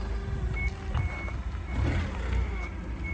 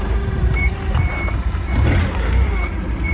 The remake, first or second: second